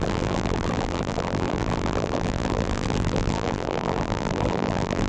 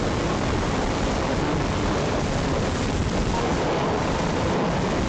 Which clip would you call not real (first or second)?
first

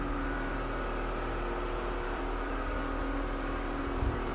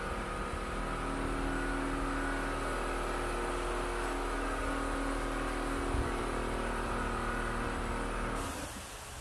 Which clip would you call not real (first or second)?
first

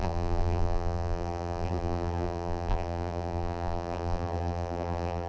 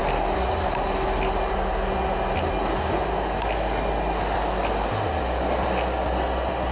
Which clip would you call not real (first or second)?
first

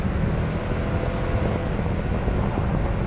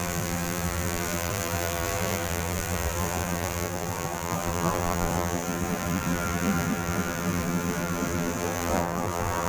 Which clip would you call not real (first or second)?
second